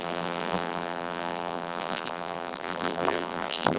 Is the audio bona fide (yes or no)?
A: no